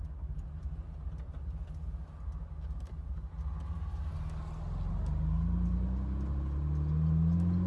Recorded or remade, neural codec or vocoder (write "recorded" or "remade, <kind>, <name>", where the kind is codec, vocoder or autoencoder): recorded